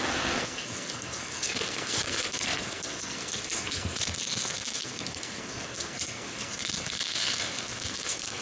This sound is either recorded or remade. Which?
remade